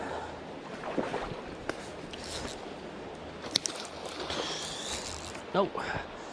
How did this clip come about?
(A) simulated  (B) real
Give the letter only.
B